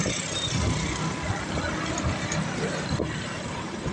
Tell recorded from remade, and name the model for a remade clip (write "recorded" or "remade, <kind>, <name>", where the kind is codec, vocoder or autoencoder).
recorded